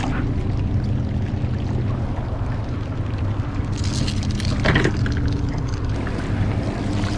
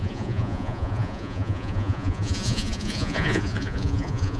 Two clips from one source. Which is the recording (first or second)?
first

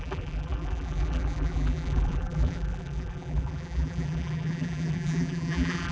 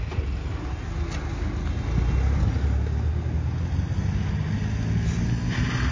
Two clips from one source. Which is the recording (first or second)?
second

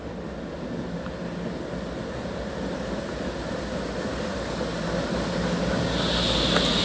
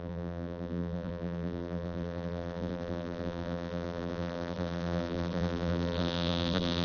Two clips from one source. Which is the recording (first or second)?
first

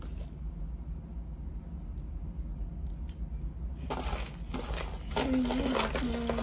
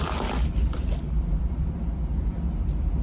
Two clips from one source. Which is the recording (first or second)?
first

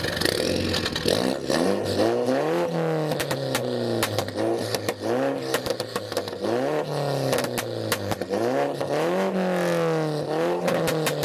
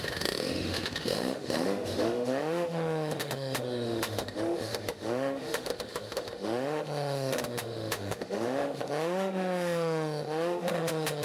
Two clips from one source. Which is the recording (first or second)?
first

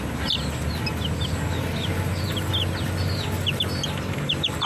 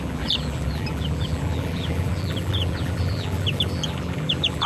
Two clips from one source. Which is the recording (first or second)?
first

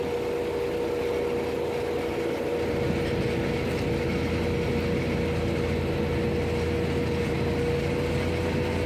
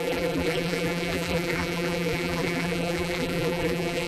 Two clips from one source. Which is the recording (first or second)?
first